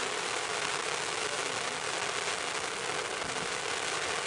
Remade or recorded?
recorded